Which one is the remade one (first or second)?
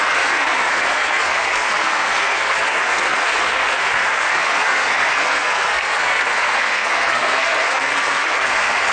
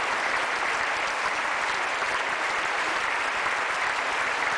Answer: first